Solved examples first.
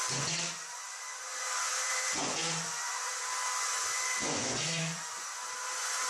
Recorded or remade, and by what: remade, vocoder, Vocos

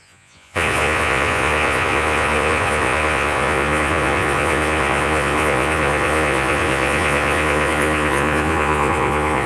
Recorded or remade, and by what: remade, vocoder, Vocos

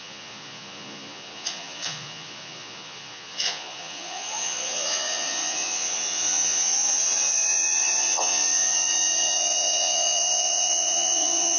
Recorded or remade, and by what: remade, vocoder, Vocos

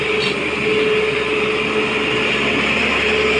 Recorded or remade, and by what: recorded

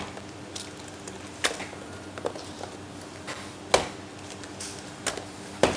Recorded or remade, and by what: recorded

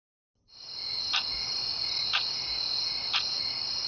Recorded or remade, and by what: recorded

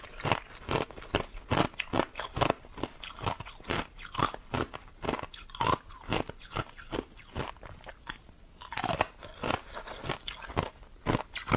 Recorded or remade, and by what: recorded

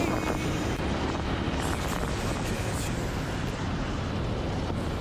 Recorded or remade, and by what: recorded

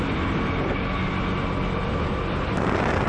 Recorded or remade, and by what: recorded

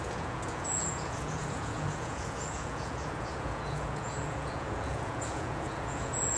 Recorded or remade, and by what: remade, vocoder, Vocos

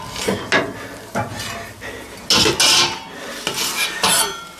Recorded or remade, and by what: recorded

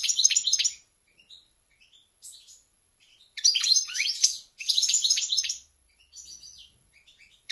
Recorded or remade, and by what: remade, vocoder, Vocos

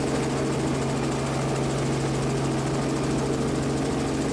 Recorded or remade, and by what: recorded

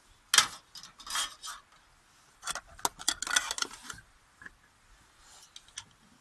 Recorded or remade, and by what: recorded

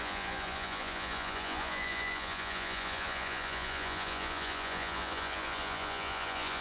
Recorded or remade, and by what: remade, vocoder, Vocos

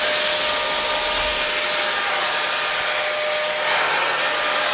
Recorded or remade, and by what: recorded